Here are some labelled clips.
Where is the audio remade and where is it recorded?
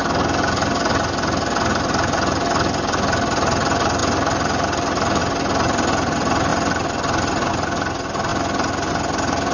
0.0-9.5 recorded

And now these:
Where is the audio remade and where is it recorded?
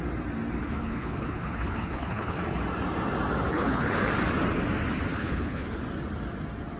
0.0-0.6 recorded; 0.6-2.4 remade; 2.4-3.5 recorded; 3.5-4.1 remade; 4.1-5.2 recorded; 5.2-5.8 remade; 5.8-6.8 recorded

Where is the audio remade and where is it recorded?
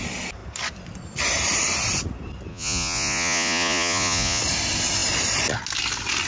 0.0-2.5 recorded; 2.5-4.4 remade; 4.4-6.3 recorded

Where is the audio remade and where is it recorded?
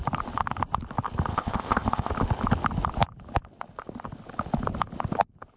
0.0-1.3 recorded; 1.3-2.1 remade; 2.1-5.6 recorded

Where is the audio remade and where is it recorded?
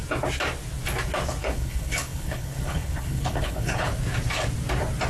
0.0-1.4 recorded; 1.4-3.9 remade; 3.9-5.1 recorded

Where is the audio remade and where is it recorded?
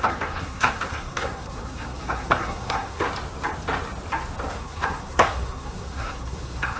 0.0-3.1 remade; 3.1-4.5 recorded; 4.5-6.8 remade